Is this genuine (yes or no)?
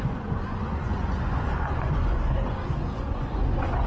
no